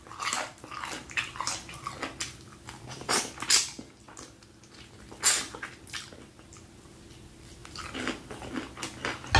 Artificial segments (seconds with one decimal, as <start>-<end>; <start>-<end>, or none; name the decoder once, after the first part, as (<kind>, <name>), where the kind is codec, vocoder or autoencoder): none